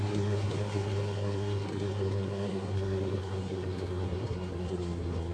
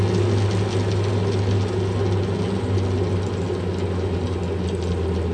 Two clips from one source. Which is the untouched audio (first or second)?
second